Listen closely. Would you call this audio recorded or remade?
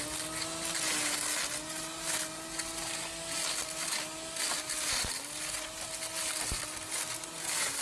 recorded